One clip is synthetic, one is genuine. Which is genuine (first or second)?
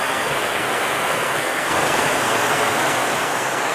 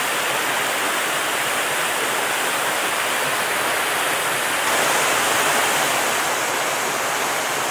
second